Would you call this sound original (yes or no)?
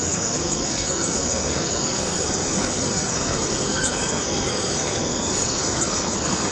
no